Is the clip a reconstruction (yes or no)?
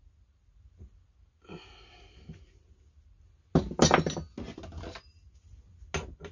no